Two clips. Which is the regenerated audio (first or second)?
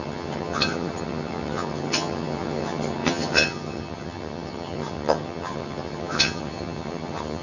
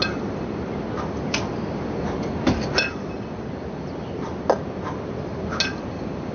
first